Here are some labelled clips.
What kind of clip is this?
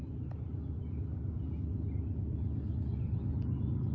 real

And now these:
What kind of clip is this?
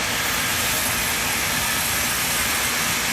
real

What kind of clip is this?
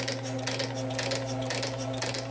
real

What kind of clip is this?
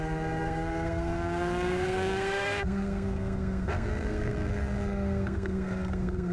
fake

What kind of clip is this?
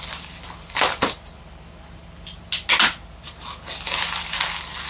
real